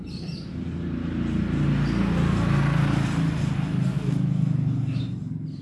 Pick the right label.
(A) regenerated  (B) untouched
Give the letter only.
B